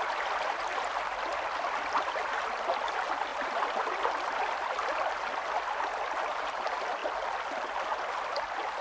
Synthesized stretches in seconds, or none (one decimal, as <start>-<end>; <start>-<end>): none